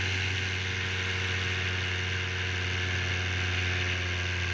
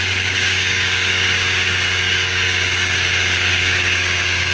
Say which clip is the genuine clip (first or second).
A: first